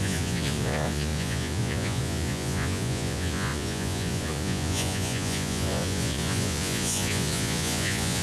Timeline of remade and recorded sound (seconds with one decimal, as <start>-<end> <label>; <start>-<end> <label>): 0.0-8.2 remade